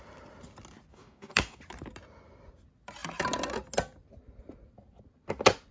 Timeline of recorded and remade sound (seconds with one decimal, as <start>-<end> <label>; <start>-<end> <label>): 0.0-0.9 recorded; 0.9-1.6 remade; 1.6-5.7 recorded